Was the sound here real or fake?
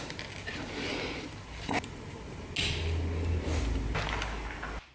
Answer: real